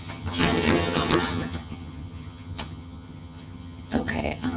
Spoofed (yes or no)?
yes